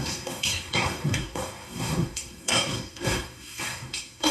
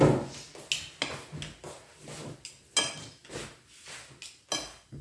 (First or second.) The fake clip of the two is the first